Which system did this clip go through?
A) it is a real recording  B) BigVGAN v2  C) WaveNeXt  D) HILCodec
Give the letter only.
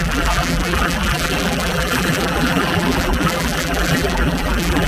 B